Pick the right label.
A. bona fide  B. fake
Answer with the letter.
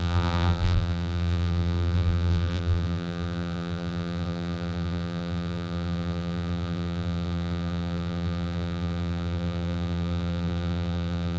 B